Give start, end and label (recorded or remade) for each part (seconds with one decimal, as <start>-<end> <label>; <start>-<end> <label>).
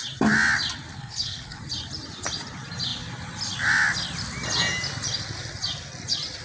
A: 0.0-0.9 recorded; 0.9-1.6 remade; 1.6-6.4 recorded